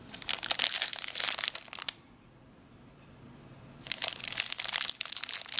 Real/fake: real